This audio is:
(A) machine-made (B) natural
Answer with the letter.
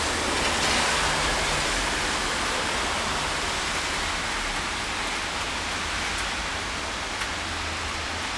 B